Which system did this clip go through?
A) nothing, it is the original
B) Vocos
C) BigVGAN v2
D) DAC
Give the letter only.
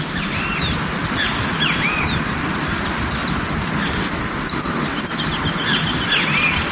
A